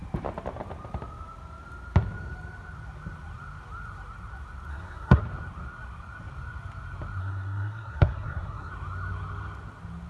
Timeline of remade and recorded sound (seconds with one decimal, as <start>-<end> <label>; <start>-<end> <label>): 0.0-4.7 recorded; 4.7-5.2 remade; 5.2-7.2 recorded; 7.2-8.7 remade; 8.7-10.1 recorded